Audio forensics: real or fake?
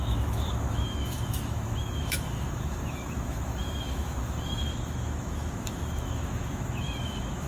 fake